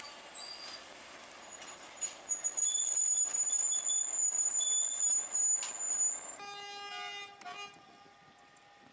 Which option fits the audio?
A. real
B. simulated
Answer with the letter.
A